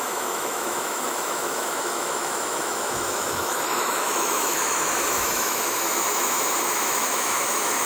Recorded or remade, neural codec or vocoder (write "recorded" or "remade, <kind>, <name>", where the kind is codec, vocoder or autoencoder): remade, autoencoder, DAC-VAE